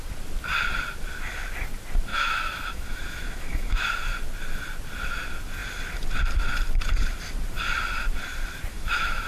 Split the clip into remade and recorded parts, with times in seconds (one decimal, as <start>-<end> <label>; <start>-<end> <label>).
0.0-2.1 recorded; 2.1-4.0 remade; 4.0-8.7 recorded; 8.7-9.3 remade